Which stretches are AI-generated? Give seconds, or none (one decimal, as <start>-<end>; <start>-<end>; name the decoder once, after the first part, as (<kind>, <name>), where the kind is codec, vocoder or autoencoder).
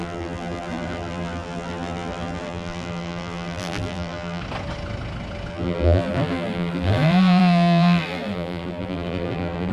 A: 0.0-4.4 (vocoder, BigVGAN v2); 5.5-9.7